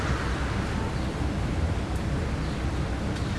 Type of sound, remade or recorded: recorded